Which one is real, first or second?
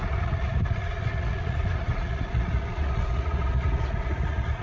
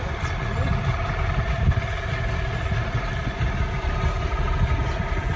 second